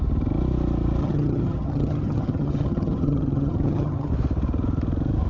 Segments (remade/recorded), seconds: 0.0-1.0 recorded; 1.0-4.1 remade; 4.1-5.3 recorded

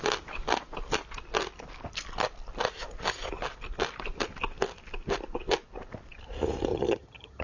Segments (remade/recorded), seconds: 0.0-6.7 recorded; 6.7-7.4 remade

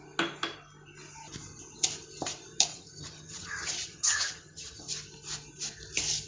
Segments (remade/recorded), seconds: 0.0-2.7 recorded; 2.7-4.8 remade; 4.8-6.3 recorded